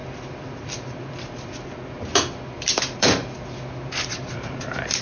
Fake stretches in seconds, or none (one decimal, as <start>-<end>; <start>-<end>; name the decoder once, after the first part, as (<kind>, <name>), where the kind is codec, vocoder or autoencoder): 0.0-1.7 (vocoder, BigVGAN v2); 2.1-5.0